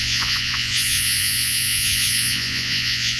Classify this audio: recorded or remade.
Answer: remade